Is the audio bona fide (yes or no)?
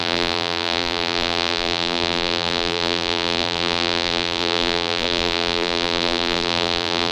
no